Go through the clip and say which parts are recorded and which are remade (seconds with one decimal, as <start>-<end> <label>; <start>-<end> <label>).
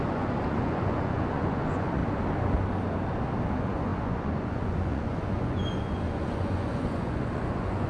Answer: 0.0-2.0 remade; 2.0-3.5 recorded; 3.5-7.9 remade